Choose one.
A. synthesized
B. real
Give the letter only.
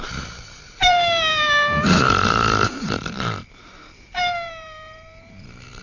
A